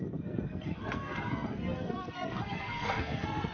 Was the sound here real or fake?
fake